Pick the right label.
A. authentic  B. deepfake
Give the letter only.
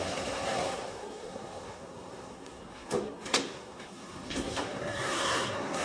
B